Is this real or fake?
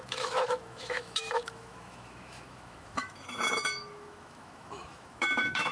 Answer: fake